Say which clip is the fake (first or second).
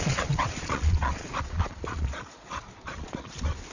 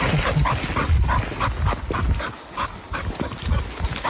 first